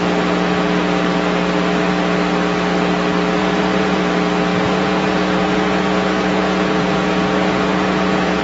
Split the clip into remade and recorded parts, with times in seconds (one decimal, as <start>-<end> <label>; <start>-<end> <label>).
0.0-3.4 recorded; 3.4-4.0 remade; 4.0-4.6 recorded; 4.6-8.4 remade